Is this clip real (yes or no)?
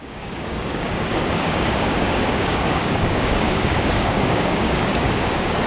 no